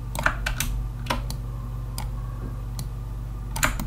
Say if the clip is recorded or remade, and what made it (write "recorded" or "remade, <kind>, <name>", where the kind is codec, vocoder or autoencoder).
recorded